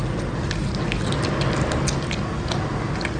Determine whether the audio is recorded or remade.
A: recorded